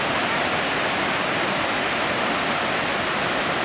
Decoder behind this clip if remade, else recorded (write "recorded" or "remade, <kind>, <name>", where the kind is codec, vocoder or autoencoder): recorded